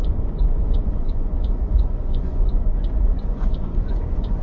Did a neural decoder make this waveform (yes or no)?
yes